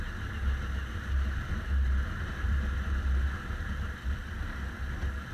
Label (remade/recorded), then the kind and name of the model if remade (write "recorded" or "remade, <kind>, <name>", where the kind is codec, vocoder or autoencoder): recorded